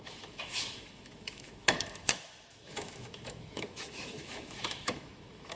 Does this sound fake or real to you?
fake